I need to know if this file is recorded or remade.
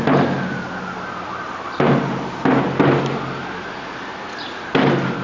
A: recorded